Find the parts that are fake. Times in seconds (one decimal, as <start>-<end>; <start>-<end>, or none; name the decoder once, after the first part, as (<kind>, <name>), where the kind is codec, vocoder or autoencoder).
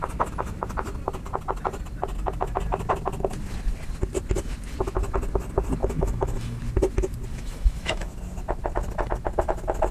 5.8-6.6 (autoencoder, DAC-VAE); 7.3-8.1